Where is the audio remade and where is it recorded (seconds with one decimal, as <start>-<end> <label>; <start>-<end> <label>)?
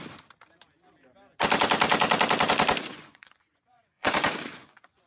0.0-2.9 recorded; 2.9-5.1 remade